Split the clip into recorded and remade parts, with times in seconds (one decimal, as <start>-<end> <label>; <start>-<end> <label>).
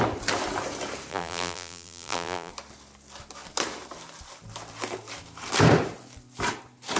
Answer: 0.0-1.1 recorded; 1.1-2.5 remade; 2.5-7.0 recorded